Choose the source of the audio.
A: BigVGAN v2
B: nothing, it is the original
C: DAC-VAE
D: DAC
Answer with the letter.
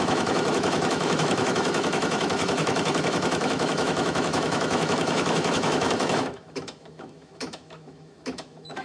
C